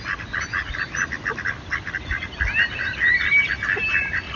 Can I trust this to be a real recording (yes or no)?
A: yes